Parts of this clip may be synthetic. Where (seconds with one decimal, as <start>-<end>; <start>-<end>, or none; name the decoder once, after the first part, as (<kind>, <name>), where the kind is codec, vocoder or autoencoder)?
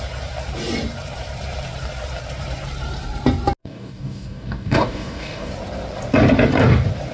3.6-5.5 (codec, DAC)